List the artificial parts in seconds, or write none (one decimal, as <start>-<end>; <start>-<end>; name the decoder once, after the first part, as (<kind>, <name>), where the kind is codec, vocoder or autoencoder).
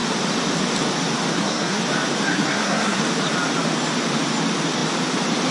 1.3-1.8 (codec, SNAC); 2.3-3.0